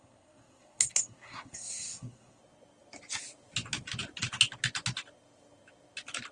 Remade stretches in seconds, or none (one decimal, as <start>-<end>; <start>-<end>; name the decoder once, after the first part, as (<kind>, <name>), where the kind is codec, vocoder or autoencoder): 0.0-2.4 (codec, SNAC)